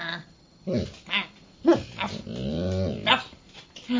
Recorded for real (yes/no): yes